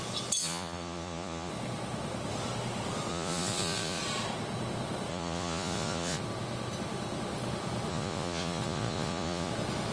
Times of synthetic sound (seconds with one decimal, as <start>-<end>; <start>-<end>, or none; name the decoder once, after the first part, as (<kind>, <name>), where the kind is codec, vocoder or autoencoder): 0.4-1.5 (vocoder, Vocos); 3.1-4.0; 5.1-6.2; 7.9-9.5